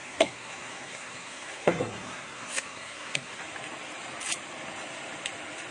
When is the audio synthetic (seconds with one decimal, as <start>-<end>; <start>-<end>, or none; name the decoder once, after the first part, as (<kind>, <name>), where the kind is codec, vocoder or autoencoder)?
0.0-3.4 (codec, SNAC)